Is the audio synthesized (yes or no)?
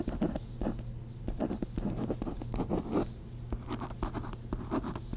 no